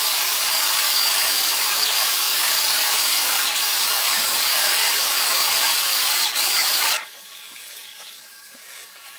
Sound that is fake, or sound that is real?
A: fake